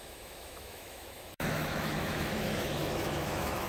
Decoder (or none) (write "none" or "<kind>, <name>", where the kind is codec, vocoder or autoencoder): autoencoder, DAC-VAE